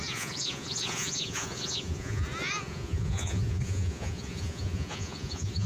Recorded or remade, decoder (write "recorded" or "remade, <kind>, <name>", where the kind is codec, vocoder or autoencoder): remade, vocoder, Vocos